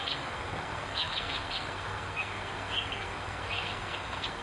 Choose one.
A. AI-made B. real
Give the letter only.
A